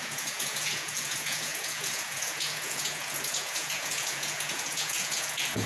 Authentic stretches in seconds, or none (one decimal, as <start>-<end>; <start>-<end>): none